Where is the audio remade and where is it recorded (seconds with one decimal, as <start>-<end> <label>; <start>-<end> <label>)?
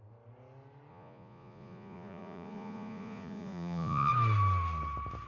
0.0-0.9 recorded; 0.9-4.1 remade; 4.1-5.3 recorded